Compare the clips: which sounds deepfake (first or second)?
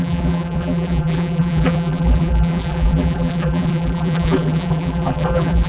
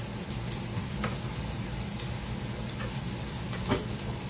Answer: first